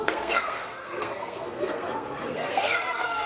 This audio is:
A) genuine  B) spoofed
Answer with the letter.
B